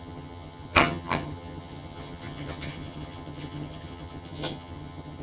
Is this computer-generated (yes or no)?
yes